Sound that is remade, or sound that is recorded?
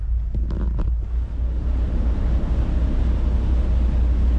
recorded